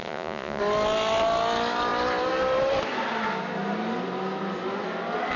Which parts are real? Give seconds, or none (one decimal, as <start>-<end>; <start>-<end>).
0.6-5.4